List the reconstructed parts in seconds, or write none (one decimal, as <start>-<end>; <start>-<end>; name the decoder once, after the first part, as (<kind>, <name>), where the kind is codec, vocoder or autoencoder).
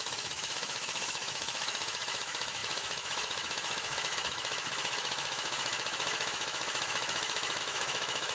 0.0-8.3 (autoencoder, DAC-VAE)